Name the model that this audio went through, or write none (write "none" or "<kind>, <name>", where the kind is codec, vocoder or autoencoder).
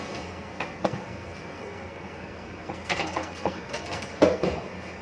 codec, SNAC